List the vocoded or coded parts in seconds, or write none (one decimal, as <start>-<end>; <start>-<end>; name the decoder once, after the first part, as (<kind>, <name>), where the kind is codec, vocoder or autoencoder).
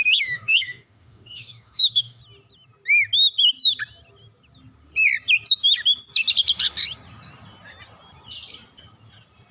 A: 0.0-2.2 (autoencoder, DAC-VAE)